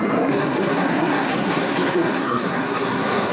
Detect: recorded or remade remade